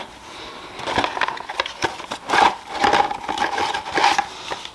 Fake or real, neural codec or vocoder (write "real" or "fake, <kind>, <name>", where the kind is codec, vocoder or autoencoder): real